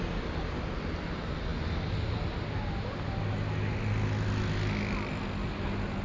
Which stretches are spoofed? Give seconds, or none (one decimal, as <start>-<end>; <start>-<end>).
none